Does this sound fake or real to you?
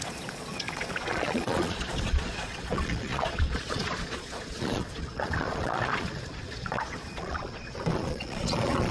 fake